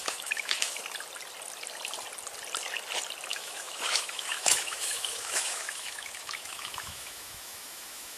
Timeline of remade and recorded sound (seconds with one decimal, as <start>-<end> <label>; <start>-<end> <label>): 0.0-0.8 remade; 0.8-3.3 recorded; 3.3-8.2 remade